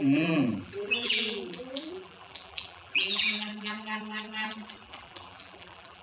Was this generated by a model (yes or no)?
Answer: yes